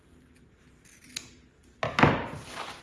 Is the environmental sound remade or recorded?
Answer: recorded